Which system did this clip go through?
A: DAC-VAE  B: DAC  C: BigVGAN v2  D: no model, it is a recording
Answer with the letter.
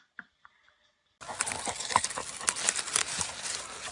D